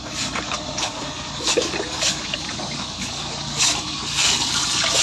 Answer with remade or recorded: remade